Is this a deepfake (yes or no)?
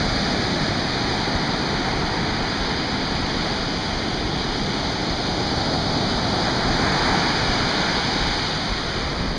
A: no